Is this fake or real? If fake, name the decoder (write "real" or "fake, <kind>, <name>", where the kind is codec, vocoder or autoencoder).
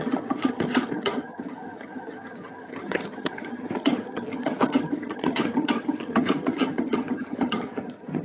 fake, vocoder, HiFi-GAN